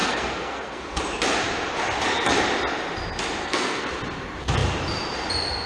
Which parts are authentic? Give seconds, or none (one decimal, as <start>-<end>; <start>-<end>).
1.0-3.4; 3.9-5.7